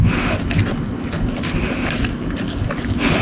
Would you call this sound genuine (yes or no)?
yes